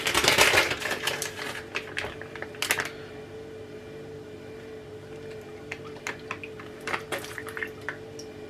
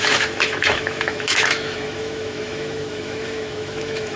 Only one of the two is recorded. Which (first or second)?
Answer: first